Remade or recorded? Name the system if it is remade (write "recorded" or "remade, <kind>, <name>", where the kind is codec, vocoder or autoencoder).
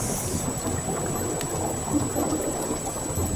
recorded